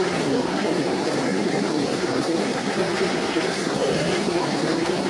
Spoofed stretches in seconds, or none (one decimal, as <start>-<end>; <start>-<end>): 0.0-5.1